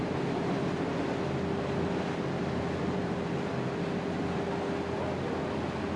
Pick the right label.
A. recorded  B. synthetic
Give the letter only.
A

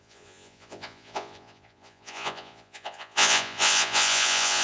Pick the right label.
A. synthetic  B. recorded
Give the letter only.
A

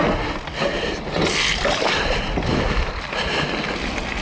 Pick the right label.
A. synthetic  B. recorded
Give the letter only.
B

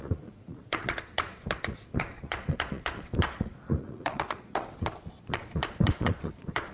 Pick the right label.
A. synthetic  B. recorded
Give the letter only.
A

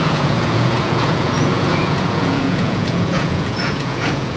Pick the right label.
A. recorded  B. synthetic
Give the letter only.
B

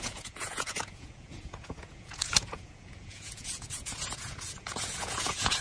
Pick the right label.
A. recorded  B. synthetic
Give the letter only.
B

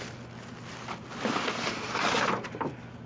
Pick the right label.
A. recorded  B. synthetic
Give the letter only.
A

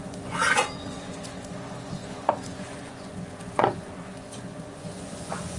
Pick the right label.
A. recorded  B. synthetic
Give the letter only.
B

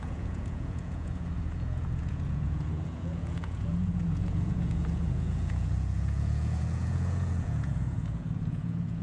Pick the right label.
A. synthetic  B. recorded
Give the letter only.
A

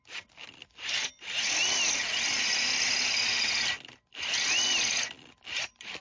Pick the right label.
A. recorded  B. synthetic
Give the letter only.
A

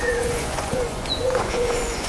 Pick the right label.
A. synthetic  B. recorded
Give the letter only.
A